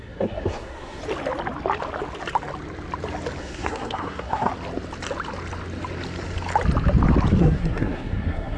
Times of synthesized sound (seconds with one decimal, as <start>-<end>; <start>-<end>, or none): 0.0-1.0; 3.4-4.5; 7.4-8.6